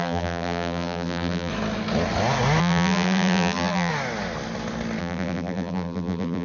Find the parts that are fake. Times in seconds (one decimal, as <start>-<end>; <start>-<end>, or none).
0.0-1.5; 2.6-3.9; 5.0-6.4